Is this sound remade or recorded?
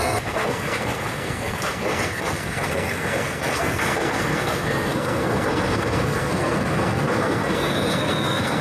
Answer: remade